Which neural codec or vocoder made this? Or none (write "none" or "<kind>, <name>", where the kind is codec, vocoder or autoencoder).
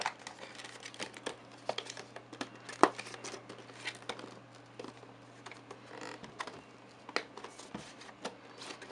none